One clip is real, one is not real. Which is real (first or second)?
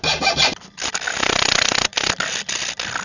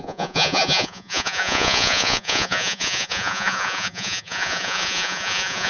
first